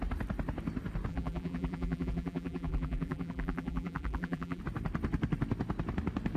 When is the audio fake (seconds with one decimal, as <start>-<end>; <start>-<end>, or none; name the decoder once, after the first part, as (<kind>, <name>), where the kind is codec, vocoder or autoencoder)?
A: 1.1-4.6 (vocoder, BigVGAN v2)

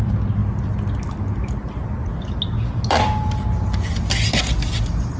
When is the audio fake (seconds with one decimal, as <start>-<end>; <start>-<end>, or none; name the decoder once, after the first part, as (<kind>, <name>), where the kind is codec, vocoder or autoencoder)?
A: none

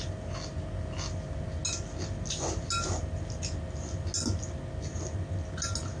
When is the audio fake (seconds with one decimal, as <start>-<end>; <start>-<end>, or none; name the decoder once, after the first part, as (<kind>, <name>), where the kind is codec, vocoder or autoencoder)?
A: none

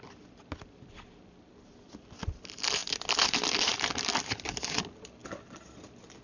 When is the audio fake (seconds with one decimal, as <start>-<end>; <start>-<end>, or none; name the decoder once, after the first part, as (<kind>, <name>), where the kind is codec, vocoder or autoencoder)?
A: none